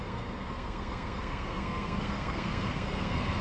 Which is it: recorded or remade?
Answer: remade